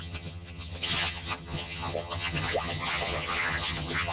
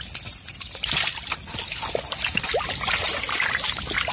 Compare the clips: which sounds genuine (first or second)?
second